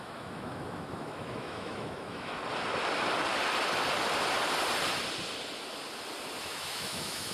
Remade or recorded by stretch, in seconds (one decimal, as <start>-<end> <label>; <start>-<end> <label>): 0.0-2.4 remade; 2.4-6.4 recorded; 6.4-7.3 remade